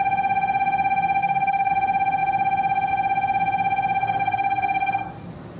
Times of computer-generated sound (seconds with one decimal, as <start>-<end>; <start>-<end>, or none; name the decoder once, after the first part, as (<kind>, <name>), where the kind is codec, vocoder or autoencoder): 1.2-1.7 (codec, SNAC); 4.0-5.1